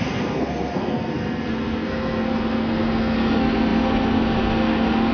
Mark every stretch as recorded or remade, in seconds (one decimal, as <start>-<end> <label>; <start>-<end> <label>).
0.0-5.1 remade